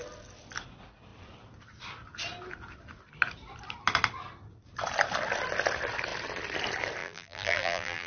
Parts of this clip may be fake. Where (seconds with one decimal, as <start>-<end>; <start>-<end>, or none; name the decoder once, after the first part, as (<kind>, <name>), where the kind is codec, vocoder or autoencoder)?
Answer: 7.0-8.1 (vocoder, BigVGAN v2)